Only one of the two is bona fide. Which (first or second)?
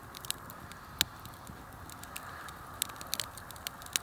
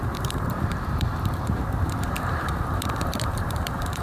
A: first